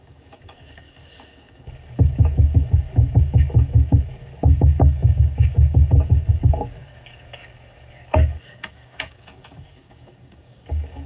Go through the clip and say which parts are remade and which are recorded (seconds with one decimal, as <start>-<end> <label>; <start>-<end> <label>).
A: 0.0-11.1 remade